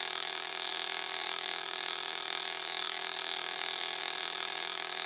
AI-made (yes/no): yes